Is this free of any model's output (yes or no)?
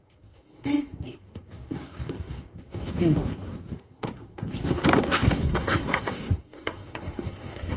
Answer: no